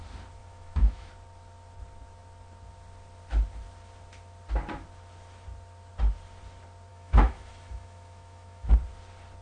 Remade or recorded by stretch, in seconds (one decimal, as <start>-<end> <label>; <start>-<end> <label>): 0.0-0.4 recorded; 0.4-1.1 remade; 1.1-6.9 recorded; 6.9-8.7 remade; 8.7-9.4 recorded